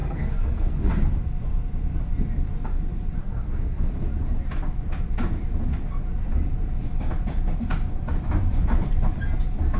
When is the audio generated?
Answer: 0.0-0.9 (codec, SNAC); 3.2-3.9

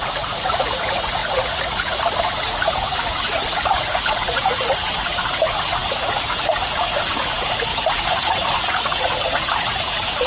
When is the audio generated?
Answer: 0.0-10.3 (vocoder, Vocos)

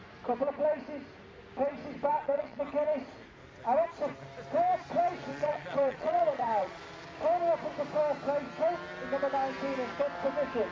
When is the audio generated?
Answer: 2.1-2.6 (vocoder, Vocos); 5.3-6.8

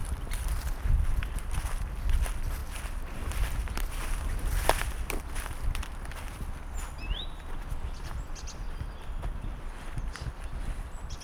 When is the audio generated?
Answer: 0.0-0.9 (vocoder, BigVGAN v2); 10.5-11.2

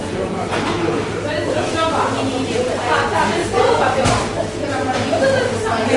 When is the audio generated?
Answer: 0.0-1.3 (vocoder, BigVGAN v2); 3.4-4.1

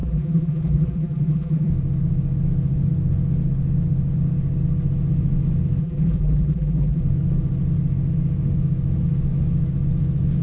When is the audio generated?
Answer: 0.0-1.7 (vocoder, BigVGAN v2); 5.8-7.0

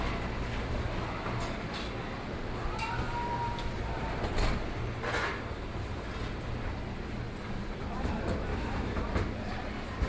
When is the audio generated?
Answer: 8.5-9.0 (autoencoder, DAC-VAE)

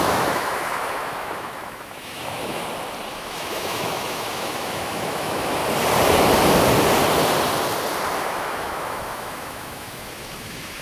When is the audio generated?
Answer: 0.0-2.6 (autoencoder, DAC-VAE); 3.1-5.6; 8.2-10.8